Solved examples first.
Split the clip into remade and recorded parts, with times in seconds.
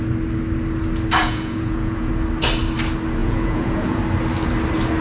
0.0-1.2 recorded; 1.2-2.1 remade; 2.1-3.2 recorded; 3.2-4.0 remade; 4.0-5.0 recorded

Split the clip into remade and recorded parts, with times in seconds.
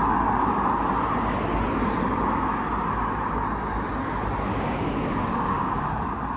0.0-4.5 recorded; 4.5-5.9 remade; 5.9-6.4 recorded